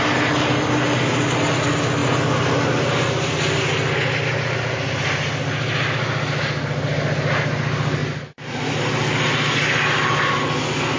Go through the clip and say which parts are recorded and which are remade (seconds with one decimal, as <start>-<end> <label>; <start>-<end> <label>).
0.0-11.0 recorded